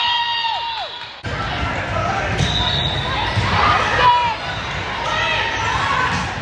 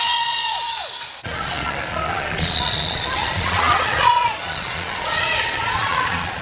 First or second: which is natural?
first